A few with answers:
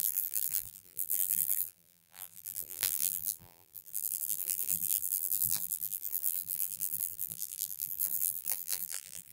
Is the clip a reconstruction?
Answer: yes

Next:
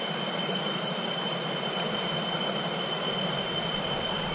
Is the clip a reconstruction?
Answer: no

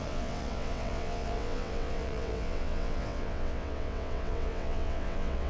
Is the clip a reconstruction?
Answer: yes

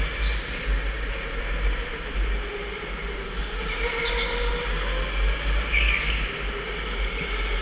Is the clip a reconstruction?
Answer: no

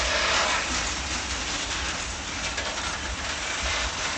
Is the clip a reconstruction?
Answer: no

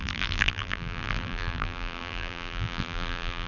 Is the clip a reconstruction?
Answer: yes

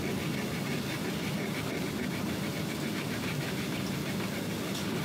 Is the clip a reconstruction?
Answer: no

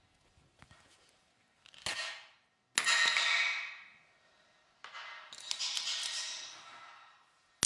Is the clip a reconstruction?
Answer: no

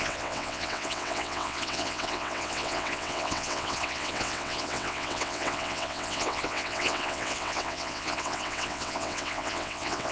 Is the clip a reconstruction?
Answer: yes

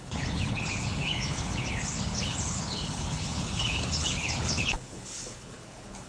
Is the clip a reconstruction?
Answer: yes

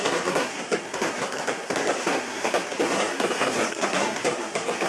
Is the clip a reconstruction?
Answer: yes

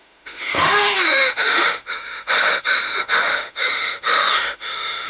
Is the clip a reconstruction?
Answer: yes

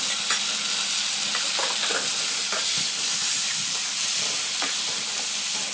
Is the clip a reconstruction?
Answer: no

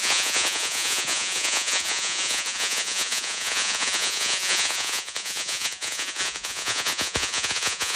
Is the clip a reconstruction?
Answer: yes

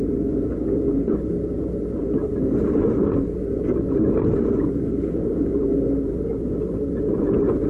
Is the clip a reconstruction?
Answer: no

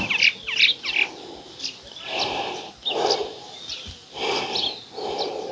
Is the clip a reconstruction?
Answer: no